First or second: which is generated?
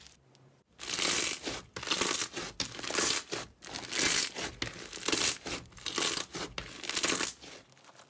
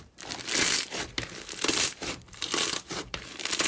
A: second